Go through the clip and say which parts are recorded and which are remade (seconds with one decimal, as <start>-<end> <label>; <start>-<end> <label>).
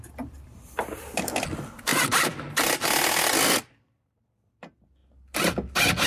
0.0-5.0 remade; 5.0-6.1 recorded